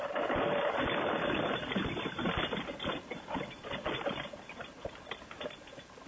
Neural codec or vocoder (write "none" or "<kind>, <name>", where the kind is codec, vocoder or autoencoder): none